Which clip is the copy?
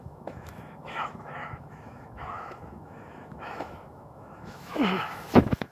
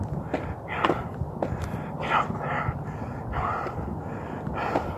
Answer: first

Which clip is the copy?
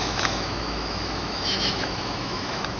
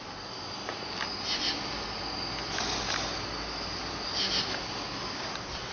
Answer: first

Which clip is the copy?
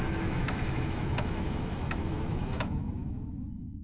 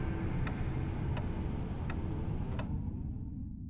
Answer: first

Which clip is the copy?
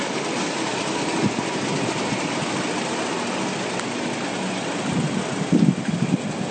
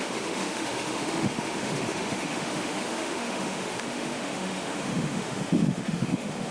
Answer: second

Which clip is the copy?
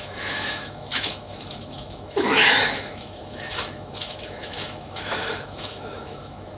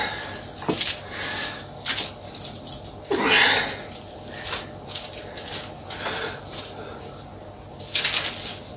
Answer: first